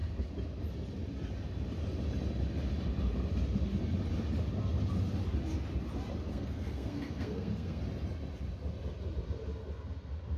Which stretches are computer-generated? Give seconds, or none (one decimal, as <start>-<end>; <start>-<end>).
6.3-7.8